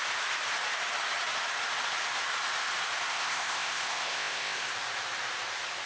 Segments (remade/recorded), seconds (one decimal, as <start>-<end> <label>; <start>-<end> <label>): 0.0-3.1 recorded; 3.1-4.7 remade; 4.7-5.9 recorded